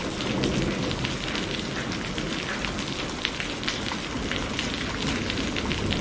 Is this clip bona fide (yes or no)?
yes